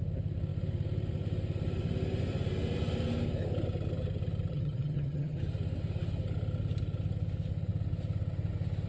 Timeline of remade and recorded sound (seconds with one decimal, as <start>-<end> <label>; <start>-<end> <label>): 0.0-4.5 recorded; 4.5-5.4 remade; 5.4-8.9 recorded